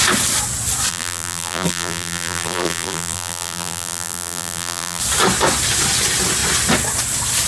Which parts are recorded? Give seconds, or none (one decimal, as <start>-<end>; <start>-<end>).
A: 0.0-0.9; 5.0-7.5

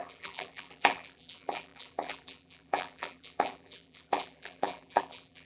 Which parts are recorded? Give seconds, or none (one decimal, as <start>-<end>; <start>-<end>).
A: none

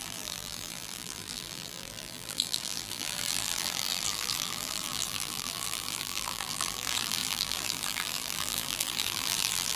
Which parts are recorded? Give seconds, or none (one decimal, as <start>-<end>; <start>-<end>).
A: none

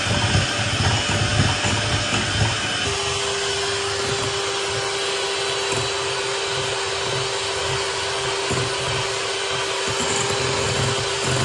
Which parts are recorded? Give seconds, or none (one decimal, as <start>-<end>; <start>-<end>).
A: 0.0-11.4

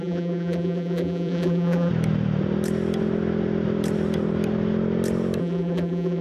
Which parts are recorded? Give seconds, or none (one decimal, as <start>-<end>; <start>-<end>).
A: 1.9-5.4

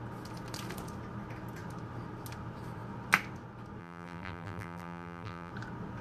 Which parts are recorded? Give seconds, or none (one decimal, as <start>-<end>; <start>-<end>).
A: 0.0-3.8; 5.5-6.0

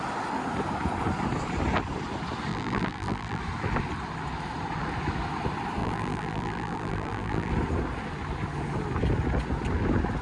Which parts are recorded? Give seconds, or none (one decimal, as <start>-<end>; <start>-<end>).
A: 0.0-2.5; 3.4-5.8; 7.5-10.2